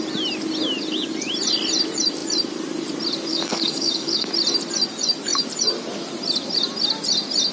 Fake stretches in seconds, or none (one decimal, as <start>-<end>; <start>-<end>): 3.3-4.3